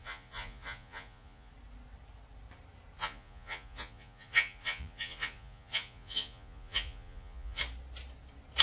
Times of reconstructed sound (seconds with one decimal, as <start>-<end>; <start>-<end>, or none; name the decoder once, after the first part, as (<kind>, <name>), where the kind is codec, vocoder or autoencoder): 0.0-1.5 (vocoder, Vocos); 3.0-7.6